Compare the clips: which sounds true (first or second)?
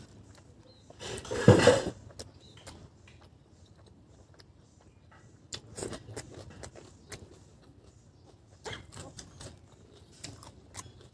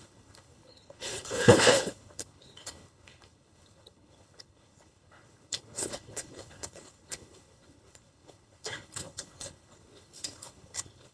first